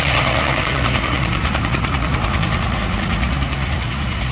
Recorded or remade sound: remade